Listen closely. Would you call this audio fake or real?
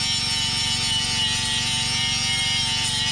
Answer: real